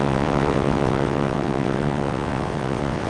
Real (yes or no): no